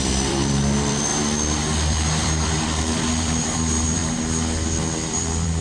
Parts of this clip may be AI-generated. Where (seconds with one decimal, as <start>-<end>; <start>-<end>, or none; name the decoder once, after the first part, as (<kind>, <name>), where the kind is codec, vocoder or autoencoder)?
0.0-1.1 (vocoder, BigVGAN v2); 1.9-4.0; 4.8-5.6